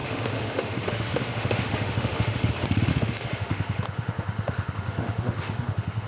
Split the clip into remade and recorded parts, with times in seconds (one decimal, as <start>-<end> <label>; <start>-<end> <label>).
0.0-2.5 remade; 2.5-2.9 recorded; 2.9-6.1 remade